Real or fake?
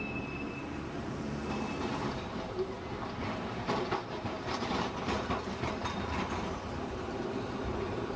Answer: fake